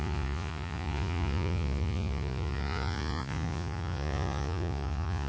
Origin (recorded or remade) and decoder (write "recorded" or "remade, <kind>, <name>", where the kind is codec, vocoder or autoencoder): remade, vocoder, Vocos